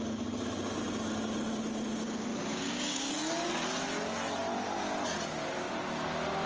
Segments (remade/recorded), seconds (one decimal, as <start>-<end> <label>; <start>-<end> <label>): 0.0-2.5 recorded; 2.5-3.1 remade; 3.1-6.5 recorded